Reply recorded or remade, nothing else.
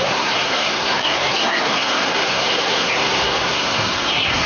remade